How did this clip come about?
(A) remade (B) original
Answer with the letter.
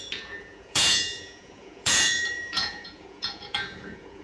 A